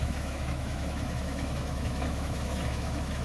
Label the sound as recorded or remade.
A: remade